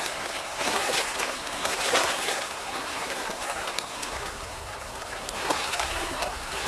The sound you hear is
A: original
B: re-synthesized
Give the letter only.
B